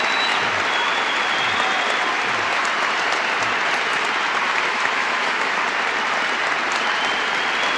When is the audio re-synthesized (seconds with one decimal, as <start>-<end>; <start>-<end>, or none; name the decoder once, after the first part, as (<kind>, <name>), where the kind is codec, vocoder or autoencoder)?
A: 4.7-5.6 (autoencoder, DAC-VAE)